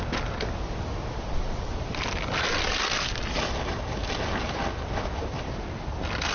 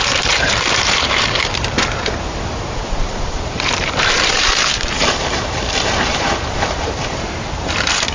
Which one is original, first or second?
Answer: first